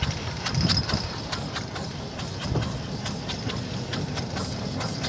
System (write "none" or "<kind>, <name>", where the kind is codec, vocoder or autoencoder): none